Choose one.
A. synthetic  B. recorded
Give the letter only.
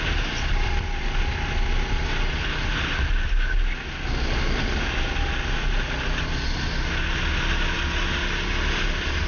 B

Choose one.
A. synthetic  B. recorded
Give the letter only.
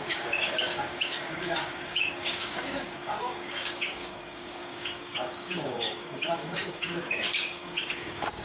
A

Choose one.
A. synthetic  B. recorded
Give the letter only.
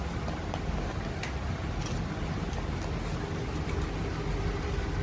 B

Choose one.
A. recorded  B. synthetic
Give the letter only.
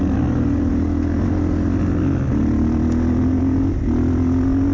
A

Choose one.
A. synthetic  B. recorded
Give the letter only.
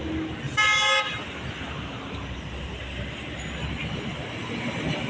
B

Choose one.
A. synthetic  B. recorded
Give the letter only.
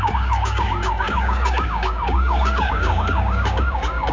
A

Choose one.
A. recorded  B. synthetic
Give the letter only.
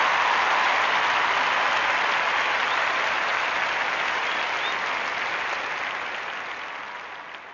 A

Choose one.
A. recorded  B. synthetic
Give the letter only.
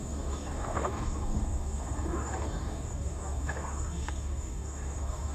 B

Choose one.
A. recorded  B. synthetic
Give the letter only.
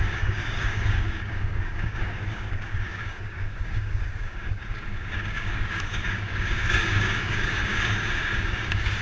B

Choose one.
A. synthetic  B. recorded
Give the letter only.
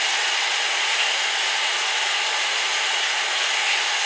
B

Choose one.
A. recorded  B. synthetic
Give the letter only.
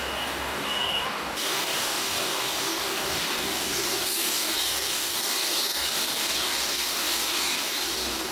B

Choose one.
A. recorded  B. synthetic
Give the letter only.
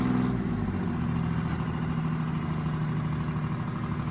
A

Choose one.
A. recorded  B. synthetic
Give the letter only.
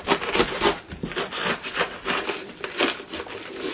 A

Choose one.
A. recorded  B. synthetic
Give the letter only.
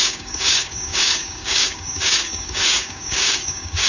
B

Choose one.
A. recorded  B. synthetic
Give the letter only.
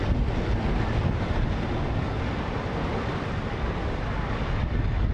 A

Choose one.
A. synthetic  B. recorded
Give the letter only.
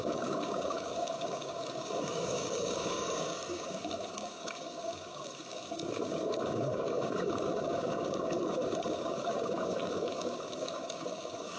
A